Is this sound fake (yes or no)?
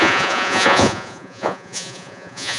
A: yes